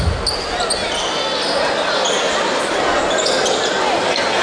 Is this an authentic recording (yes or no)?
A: yes